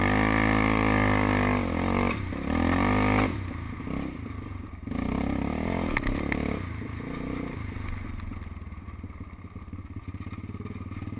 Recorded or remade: recorded